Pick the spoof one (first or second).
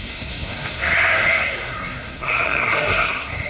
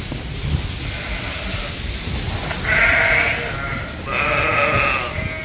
first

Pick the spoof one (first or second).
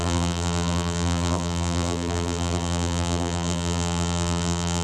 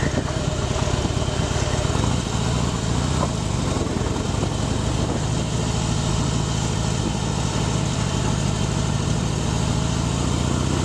first